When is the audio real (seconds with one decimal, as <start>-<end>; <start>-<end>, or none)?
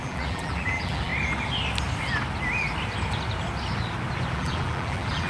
1.1-4.3